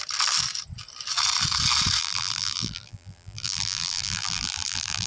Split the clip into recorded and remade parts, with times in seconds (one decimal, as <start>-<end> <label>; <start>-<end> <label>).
0.0-2.0 recorded; 2.0-5.1 remade

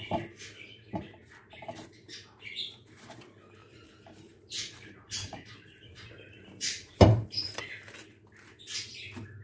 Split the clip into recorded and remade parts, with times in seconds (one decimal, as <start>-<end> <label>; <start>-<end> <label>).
0.0-1.2 recorded; 1.2-2.5 remade; 2.5-3.6 recorded; 3.6-7.6 remade; 7.6-9.4 recorded

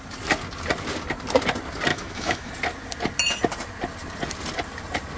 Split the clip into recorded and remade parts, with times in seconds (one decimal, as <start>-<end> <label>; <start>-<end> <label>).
0.0-1.9 recorded; 1.9-2.5 remade; 2.5-5.2 recorded

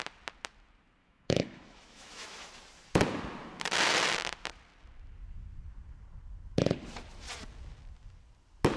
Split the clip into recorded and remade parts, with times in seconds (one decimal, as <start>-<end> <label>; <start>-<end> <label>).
0.0-1.0 recorded; 1.0-2.5 remade; 2.5-8.8 recorded